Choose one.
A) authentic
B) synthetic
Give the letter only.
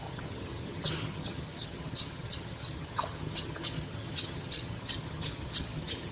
B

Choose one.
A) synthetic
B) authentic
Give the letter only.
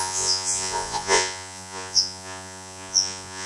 A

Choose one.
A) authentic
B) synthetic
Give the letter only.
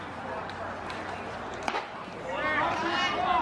A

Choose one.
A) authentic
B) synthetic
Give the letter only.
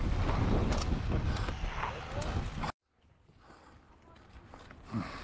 A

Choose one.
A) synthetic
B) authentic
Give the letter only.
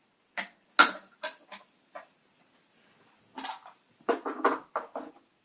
B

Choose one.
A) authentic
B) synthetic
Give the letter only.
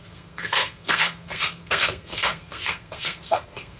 B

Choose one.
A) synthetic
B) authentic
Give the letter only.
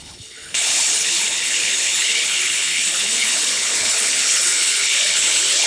A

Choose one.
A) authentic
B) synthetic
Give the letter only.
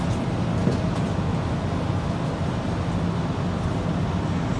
A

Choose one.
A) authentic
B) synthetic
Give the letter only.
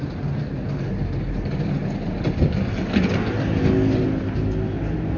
A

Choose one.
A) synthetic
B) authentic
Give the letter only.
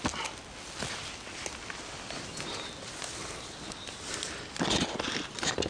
B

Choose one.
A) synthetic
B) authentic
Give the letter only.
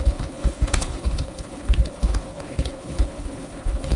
A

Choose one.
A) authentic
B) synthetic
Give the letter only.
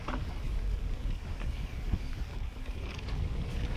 B